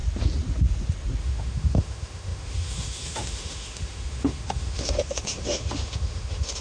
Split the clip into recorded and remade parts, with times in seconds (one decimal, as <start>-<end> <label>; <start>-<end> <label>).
0.0-1.2 recorded; 1.2-6.6 remade